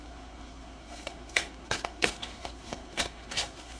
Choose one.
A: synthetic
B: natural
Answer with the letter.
A